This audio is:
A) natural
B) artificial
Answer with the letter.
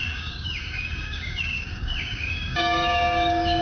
B